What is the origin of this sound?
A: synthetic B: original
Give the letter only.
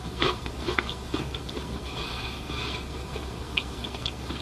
A